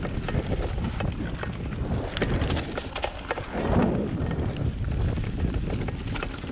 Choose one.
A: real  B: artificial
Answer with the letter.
A